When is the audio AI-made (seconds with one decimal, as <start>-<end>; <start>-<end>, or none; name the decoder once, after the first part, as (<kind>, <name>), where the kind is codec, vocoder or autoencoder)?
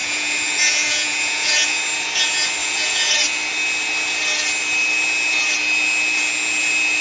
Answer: 0.0-1.8 (vocoder, Vocos); 2.6-3.1